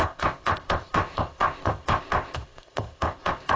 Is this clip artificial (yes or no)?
yes